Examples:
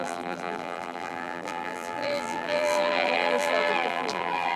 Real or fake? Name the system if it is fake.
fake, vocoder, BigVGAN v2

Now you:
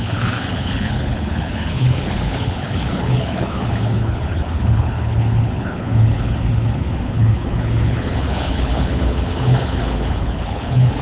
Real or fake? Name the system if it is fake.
fake, codec, HILCodec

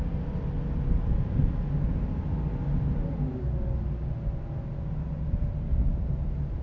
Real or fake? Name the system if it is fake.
real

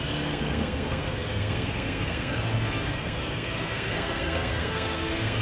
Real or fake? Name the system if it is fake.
fake, codec, SNAC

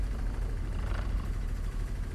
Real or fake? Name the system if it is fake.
fake, vocoder, BigVGAN v2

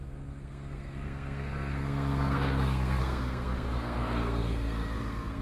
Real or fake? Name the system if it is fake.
fake, codec, SNAC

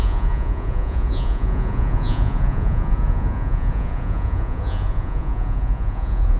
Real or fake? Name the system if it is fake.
fake, vocoder, Vocos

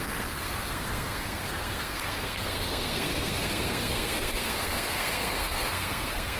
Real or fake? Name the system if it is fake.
fake, codec, SNAC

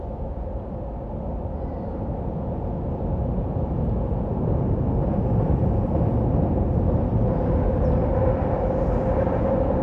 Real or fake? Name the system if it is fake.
real